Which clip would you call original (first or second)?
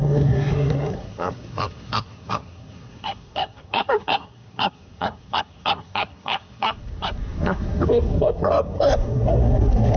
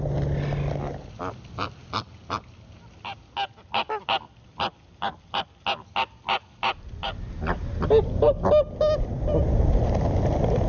second